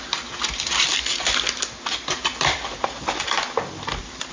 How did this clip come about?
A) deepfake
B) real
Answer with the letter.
B